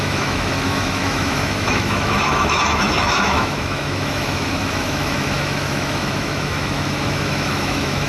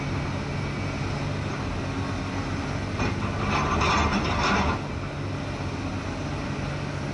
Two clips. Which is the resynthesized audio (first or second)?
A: first